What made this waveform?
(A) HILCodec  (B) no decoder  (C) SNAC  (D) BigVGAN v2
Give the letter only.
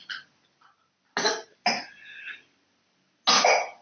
B